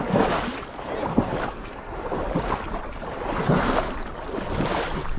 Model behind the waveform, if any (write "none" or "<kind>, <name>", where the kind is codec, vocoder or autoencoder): none